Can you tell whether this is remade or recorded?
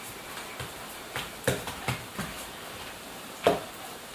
remade